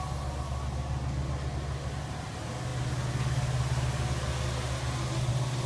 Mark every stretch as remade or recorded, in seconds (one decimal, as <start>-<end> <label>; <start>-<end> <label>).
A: 0.0-5.7 recorded